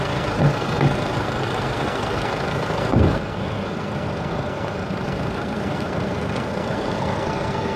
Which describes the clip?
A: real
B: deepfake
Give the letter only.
B